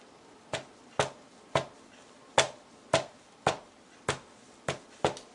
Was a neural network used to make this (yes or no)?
no